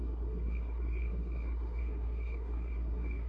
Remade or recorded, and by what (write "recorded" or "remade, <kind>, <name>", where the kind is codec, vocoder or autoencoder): remade, codec, SNAC